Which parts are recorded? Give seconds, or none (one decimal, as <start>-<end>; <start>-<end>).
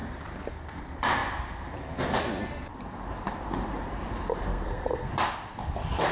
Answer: 0.0-4.5; 5.1-6.1